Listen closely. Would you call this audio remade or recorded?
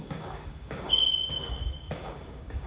remade